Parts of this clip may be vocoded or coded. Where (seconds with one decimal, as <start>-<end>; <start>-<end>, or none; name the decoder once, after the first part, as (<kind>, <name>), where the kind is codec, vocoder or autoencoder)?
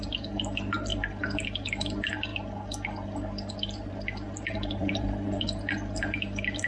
4.8-5.4 (vocoder, BigVGAN v2)